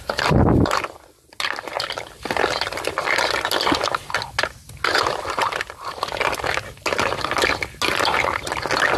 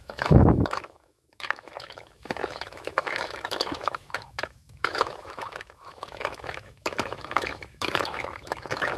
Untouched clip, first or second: first